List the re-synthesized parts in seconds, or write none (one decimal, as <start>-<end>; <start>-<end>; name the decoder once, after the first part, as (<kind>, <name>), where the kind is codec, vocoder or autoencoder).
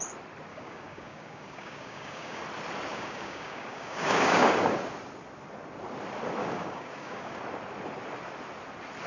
0.5-2.4 (codec, DAC); 2.9-4.5; 6.4-7.4